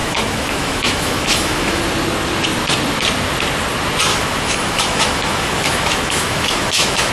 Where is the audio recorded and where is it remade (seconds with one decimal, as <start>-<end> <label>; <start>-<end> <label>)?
0.0-1.8 remade; 1.8-4.1 recorded; 4.1-7.1 remade